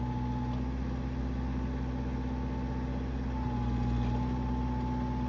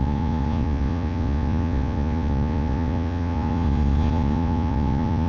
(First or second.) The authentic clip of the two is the first